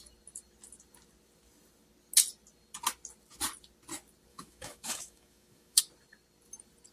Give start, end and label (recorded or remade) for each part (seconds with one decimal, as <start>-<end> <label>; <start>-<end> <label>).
0.0-4.3 recorded; 4.3-5.8 remade; 5.8-6.9 recorded